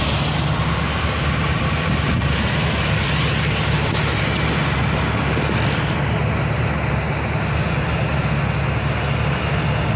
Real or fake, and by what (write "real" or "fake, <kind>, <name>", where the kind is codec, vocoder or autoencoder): real